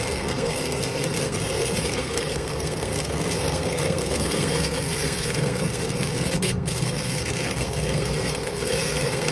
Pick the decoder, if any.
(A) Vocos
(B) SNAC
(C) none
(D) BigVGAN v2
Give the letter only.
B